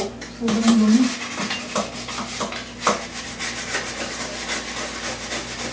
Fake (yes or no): no